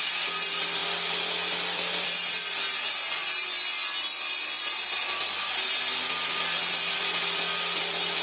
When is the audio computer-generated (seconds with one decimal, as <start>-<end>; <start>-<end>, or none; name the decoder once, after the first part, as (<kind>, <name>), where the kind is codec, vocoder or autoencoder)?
none

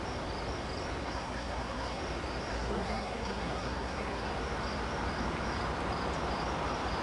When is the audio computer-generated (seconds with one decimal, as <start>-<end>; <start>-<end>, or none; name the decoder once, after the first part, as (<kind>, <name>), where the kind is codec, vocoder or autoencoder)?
1.0-2.0 (codec, SNAC); 2.5-4.3

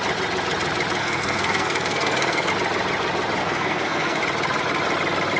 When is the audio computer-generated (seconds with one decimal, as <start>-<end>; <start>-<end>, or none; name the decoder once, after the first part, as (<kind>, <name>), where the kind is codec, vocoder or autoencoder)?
1.0-2.5 (codec, SNAC); 3.4-4.2

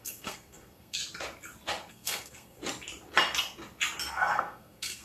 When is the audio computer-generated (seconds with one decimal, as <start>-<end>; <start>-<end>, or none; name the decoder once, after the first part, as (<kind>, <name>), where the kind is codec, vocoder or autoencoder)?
0.0-1.0 (codec, SNAC); 1.9-2.6; 4.1-5.0

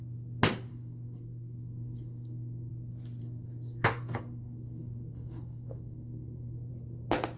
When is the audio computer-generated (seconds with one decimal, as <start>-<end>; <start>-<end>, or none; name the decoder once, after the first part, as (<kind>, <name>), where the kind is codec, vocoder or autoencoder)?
0.7-2.7 (codec, SNAC); 3.2-6.7

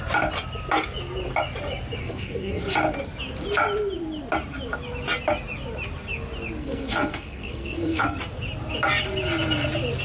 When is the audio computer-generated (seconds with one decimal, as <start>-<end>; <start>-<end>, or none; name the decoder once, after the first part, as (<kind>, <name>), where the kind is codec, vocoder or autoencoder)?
2.0-2.6 (codec, SNAC); 6.6-8.2